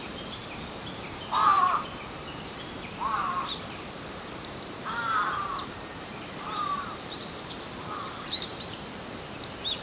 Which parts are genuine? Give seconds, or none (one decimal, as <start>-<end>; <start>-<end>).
none